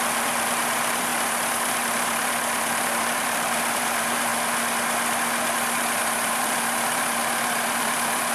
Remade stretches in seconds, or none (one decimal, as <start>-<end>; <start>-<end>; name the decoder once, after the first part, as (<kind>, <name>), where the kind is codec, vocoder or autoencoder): 0.0-4.3 (vocoder, BigVGAN v2); 6.0-8.3